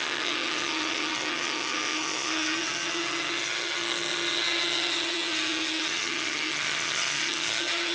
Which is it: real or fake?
fake